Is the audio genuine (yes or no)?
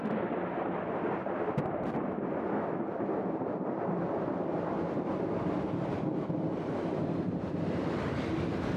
yes